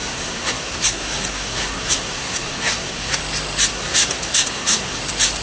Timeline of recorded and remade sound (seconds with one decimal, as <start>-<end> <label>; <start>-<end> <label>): 0.0-3.2 remade; 3.2-3.7 recorded; 3.7-5.0 remade; 5.0-5.4 recorded